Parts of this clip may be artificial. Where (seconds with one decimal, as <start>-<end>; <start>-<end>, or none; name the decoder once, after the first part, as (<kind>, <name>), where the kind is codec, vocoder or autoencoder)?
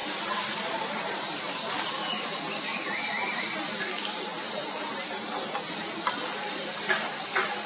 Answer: 0.0-1.7 (vocoder, BigVGAN v2)